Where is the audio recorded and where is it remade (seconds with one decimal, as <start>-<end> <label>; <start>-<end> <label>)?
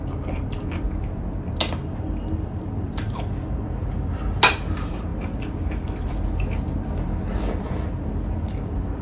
0.0-9.0 recorded